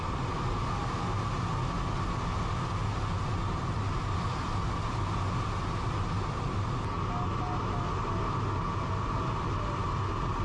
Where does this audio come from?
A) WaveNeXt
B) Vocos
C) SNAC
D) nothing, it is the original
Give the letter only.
D